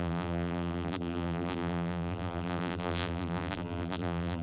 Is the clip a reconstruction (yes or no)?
yes